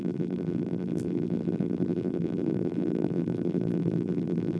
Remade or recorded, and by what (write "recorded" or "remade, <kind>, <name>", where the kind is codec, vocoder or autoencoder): remade, vocoder, BigVGAN v2